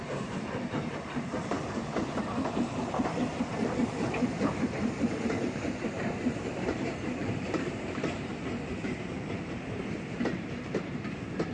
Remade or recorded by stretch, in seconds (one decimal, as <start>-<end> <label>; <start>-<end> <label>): 0.0-8.3 remade; 8.3-9.1 recorded; 9.1-11.5 remade